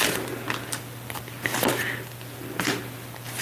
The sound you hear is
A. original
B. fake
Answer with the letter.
A